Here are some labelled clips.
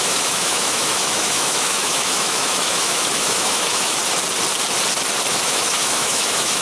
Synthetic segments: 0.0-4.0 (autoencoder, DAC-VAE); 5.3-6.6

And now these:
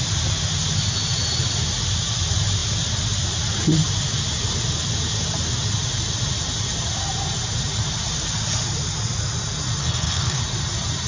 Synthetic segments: 9.8-10.4 (codec, SNAC)

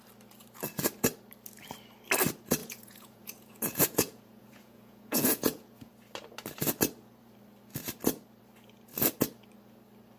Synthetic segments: 2.6-5.9 (vocoder, Vocos)

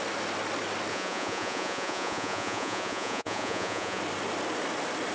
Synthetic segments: 0.9-4.0 (vocoder, Vocos)

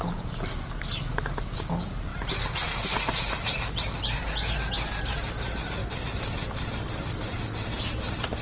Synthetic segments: none

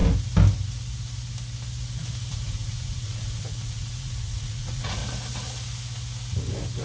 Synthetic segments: 2.3-5.0 (vocoder, Vocos)

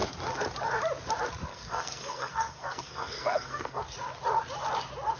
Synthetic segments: 1.5-3.8 (codec, SNAC)